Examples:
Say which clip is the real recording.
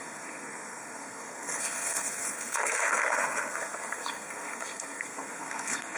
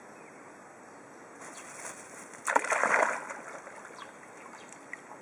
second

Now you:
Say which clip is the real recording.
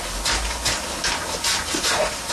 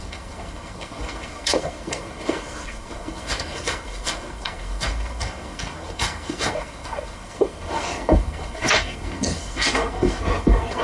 first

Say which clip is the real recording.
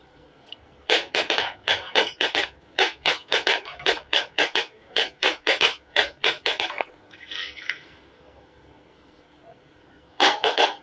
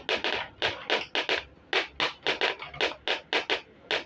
second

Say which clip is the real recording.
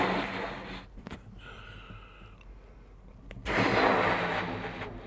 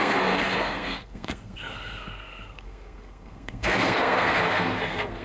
first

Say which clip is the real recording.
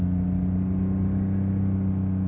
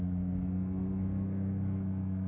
first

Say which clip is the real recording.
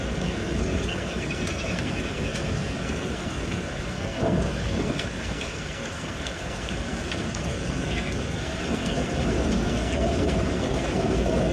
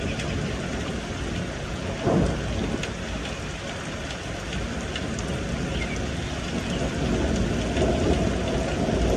second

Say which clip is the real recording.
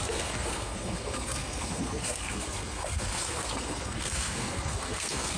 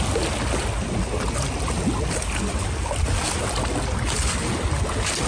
second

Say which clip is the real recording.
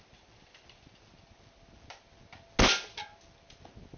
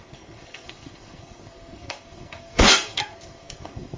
first